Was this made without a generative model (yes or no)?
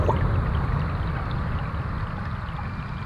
yes